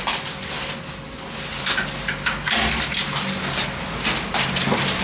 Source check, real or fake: real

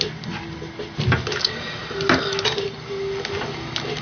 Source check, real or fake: real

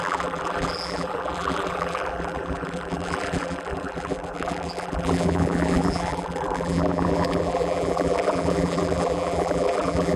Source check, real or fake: fake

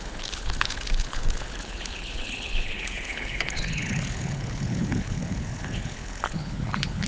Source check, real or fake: fake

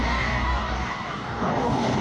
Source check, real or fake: fake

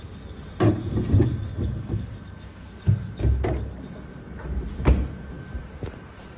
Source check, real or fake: real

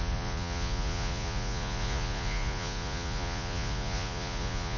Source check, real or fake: fake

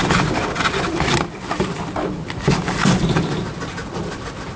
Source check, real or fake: real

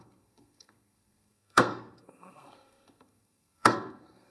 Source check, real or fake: fake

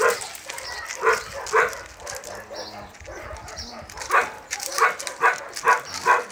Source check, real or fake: real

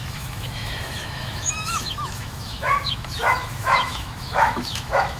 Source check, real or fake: fake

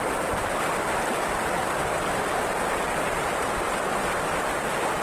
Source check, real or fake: fake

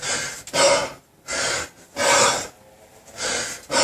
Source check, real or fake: real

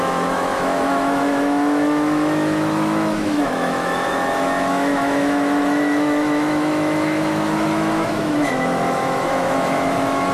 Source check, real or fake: fake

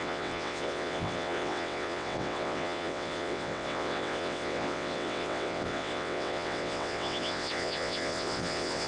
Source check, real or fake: fake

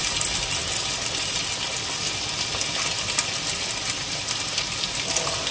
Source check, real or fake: real